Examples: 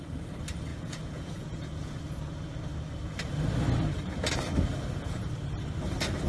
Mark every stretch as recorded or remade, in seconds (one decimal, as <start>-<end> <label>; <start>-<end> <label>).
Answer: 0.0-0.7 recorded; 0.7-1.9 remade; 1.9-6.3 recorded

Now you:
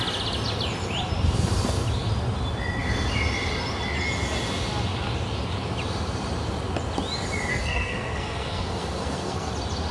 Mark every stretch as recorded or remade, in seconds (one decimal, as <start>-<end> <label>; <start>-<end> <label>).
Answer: 0.0-7.5 recorded; 7.5-9.5 remade; 9.5-9.9 recorded

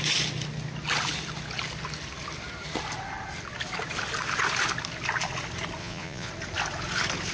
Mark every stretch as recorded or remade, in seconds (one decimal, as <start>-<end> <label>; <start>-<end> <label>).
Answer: 0.0-5.8 recorded; 5.8-6.3 remade; 6.3-7.3 recorded

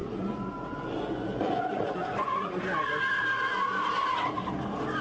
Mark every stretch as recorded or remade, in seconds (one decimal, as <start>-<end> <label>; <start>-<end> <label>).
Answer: 0.0-2.6 remade; 2.6-5.0 recorded

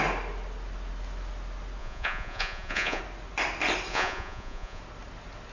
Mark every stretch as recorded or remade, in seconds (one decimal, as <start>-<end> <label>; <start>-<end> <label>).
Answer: 0.0-1.8 recorded; 1.8-3.0 remade; 3.0-3.9 recorded; 3.9-4.8 remade; 4.8-5.5 recorded

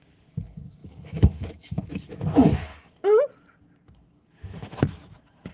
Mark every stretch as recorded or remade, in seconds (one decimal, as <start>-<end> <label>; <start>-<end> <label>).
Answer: 0.0-2.7 remade; 2.7-3.7 recorded; 3.7-5.5 remade

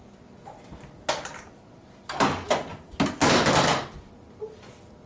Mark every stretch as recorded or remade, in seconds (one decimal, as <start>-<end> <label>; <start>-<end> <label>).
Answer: 0.0-5.1 recorded

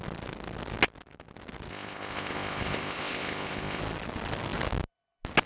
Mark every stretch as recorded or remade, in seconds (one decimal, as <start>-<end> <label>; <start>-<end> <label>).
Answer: 0.0-1.7 recorded; 1.7-3.8 remade; 3.8-5.5 recorded